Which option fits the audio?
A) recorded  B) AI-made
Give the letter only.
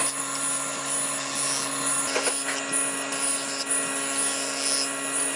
A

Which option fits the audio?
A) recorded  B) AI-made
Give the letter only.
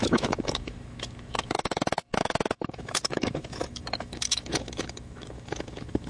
B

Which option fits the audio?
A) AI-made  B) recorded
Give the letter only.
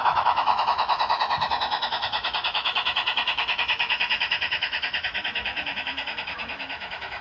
A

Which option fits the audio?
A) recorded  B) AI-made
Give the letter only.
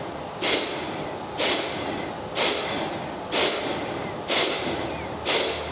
A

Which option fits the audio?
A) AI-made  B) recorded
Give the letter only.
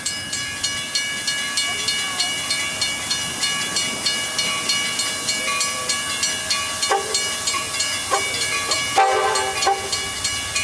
B